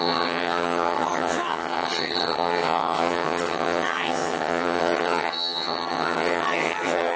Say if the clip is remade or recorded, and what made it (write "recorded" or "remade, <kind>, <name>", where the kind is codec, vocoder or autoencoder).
remade, vocoder, HiFi-GAN